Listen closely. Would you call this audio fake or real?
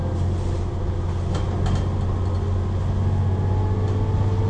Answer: real